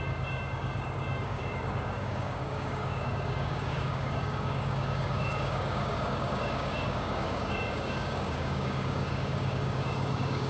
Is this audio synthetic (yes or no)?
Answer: yes